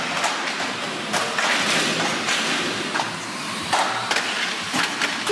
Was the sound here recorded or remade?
recorded